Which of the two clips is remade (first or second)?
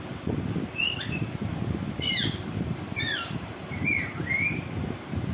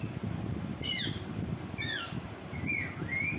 first